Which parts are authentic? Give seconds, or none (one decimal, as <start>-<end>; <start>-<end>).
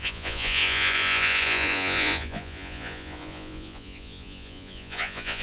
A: none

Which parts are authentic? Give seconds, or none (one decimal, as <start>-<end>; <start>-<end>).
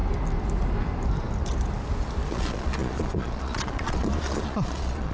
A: 0.0-2.3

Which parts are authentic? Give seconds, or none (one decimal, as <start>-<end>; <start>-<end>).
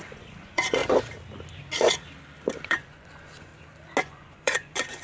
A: 0.8-2.6; 3.5-4.0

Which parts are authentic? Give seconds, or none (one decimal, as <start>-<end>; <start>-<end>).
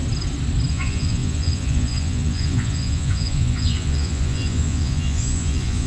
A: 0.0-0.7